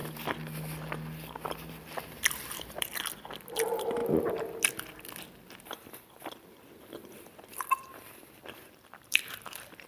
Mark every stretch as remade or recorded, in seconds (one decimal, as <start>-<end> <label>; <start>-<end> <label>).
0.0-4.0 remade; 4.0-5.6 recorded; 5.6-9.9 remade